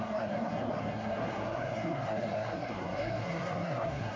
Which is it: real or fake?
fake